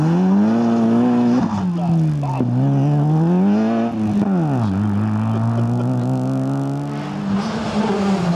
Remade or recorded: recorded